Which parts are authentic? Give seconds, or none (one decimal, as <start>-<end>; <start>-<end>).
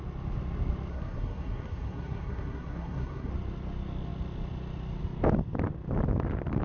0.0-0.9; 3.3-6.6